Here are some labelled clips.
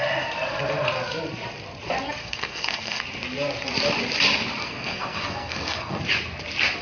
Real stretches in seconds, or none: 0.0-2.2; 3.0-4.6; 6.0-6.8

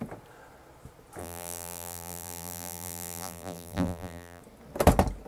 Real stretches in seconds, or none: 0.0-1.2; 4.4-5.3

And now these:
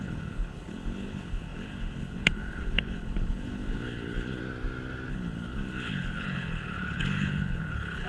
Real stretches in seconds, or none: 4.4-5.1

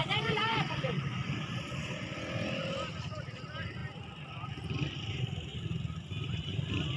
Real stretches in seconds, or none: 1.0-7.0

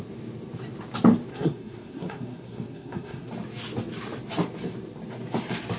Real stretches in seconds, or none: 0.0-1.3; 3.3-5.8